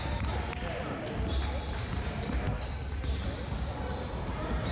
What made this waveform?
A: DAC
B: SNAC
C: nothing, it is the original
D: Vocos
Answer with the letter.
C